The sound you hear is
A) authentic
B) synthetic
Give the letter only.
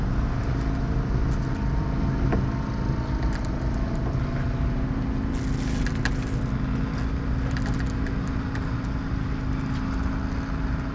A